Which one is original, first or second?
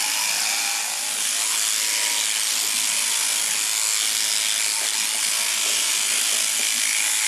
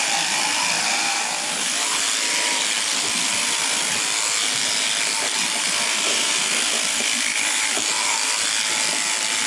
first